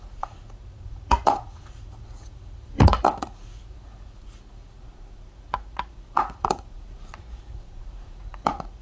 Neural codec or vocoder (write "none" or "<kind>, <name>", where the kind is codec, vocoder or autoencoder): vocoder, Vocos